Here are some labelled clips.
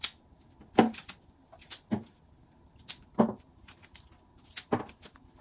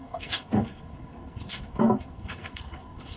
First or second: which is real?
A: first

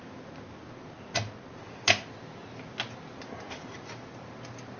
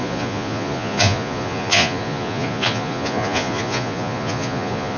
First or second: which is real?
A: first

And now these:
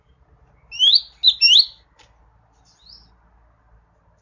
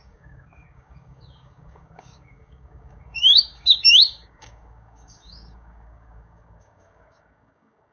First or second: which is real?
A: first